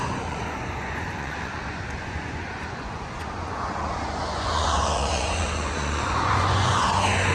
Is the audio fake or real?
fake